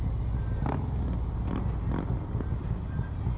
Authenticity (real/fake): real